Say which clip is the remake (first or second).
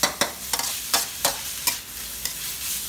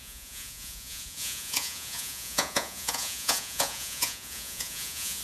second